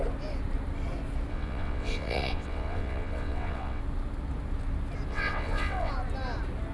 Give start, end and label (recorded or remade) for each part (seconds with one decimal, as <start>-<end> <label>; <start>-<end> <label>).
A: 0.0-1.3 recorded; 1.3-3.8 remade; 3.8-5.1 recorded; 5.1-5.9 remade; 5.9-6.7 recorded